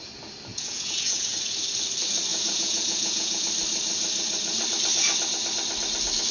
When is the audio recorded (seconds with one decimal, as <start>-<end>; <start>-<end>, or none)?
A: 0.0-0.5; 1.3-2.3; 3.4-6.3